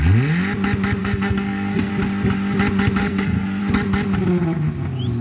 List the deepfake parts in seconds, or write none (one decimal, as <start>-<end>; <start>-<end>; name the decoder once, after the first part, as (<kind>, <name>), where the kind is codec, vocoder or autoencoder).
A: 1.0-1.9 (codec, SNAC); 3.0-3.6